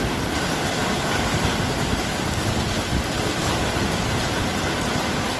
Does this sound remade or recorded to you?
recorded